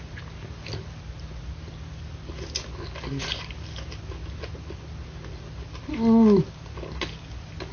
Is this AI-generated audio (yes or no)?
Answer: no